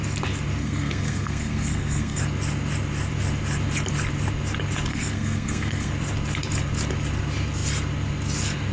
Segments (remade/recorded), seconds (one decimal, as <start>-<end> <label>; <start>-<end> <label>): 0.0-0.6 recorded; 0.6-2.2 remade; 2.2-4.9 recorded; 4.9-5.9 remade; 5.9-8.7 recorded